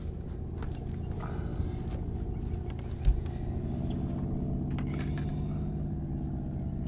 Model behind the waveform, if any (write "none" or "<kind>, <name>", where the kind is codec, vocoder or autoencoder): none